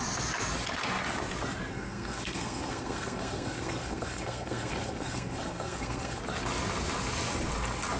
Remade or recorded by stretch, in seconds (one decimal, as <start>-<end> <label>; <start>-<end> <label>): 0.0-1.7 recorded; 1.7-6.2 remade; 6.2-8.0 recorded